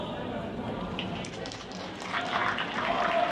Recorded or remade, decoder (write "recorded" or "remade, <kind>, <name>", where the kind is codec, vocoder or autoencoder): recorded